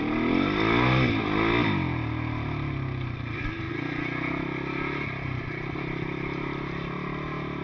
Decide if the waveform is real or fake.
real